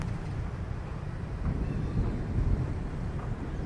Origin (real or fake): fake